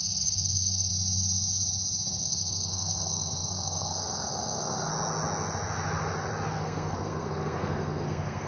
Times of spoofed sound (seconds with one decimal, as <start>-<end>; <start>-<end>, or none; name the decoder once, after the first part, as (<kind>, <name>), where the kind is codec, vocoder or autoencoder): 0.0-0.9 (codec, SNAC); 2.2-4.9; 6.6-8.5

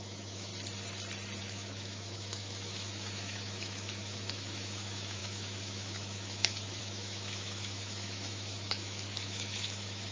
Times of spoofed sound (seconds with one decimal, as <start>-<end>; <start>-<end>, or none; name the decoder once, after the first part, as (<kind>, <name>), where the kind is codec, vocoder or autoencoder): 0.0-0.5 (autoencoder, DAC-VAE); 1.4-10.1

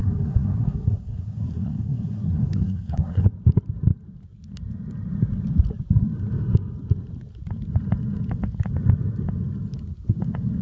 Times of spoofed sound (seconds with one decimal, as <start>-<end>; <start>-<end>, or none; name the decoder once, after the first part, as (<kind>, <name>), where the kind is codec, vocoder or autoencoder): 0.0-3.3 (codec, SNAC)

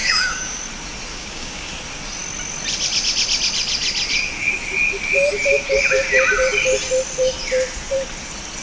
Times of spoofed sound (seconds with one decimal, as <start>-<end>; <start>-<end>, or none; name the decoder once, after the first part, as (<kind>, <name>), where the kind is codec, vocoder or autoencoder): 0.0-0.6 (codec, DAC); 1.1-1.7

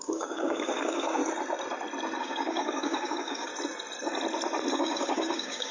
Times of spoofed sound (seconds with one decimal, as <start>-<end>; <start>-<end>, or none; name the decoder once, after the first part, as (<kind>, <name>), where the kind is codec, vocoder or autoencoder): 0.0-1.2 (codec, DAC); 2.2-3.5; 4.7-5.7